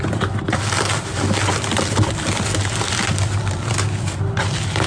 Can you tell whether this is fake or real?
real